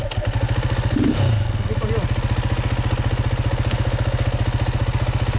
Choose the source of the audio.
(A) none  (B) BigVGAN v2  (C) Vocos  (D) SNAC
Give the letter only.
A